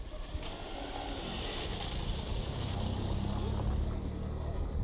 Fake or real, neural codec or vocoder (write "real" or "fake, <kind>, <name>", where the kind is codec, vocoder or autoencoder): real